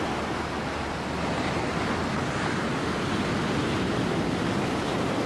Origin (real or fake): real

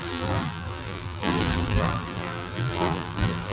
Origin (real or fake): fake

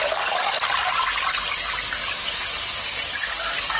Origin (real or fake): real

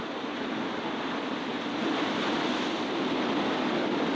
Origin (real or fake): real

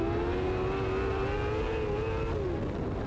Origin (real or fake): real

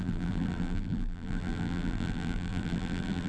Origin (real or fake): fake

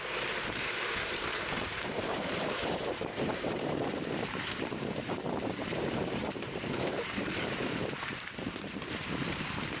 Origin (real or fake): fake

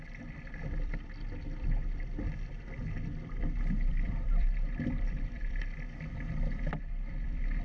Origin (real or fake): fake